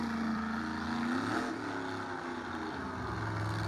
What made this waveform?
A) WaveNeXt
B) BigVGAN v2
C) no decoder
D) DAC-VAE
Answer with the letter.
C